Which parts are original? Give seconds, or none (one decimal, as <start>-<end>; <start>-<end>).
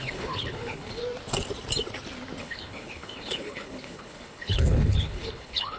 1.0-2.4